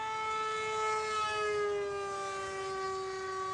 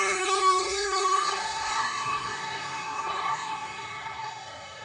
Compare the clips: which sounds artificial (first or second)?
second